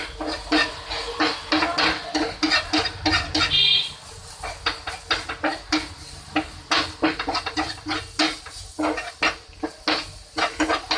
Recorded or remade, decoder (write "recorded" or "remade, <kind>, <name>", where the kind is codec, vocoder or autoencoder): recorded